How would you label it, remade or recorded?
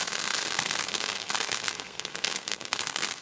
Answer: remade